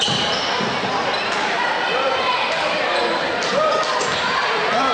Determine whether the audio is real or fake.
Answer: real